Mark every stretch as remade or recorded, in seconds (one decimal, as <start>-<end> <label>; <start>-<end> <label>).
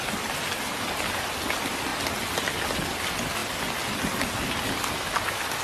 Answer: 0.0-5.6 recorded